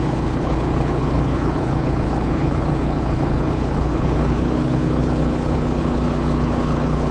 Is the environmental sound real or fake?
fake